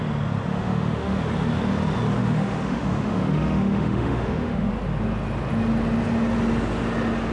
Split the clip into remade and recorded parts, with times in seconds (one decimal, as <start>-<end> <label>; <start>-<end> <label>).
0.0-0.5 recorded; 0.5-1.2 remade; 1.2-2.2 recorded; 2.2-4.7 remade; 4.7-7.3 recorded